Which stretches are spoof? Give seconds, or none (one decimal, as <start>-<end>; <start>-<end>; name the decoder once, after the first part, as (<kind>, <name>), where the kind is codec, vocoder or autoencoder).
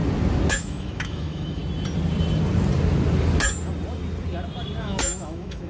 0.5-1.6 (autoencoder, DAC-VAE); 4.8-5.7